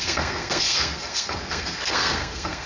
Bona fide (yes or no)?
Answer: no